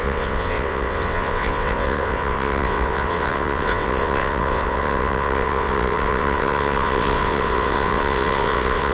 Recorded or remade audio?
remade